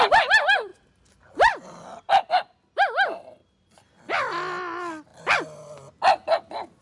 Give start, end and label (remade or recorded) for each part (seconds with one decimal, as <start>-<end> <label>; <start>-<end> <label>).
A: 0.0-6.8 recorded